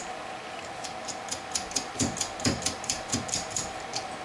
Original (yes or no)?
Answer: yes